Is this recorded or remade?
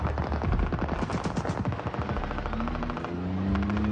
recorded